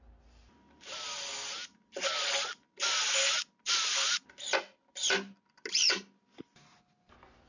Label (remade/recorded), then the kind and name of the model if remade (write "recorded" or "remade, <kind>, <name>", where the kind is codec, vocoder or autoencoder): recorded